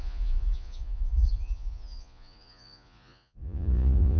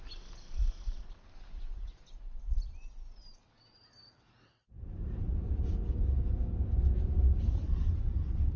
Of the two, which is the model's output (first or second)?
first